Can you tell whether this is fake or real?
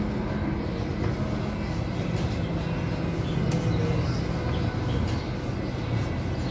real